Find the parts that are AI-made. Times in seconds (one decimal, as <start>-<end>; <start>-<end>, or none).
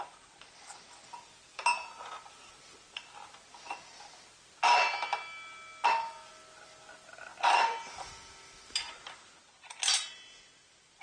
none